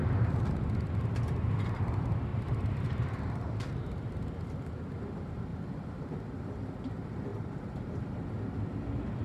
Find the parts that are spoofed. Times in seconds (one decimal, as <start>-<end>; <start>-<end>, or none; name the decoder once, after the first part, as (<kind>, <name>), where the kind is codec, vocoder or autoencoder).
2.3-4.1 (vocoder, BigVGAN v2); 5.5-6.7; 7.3-7.9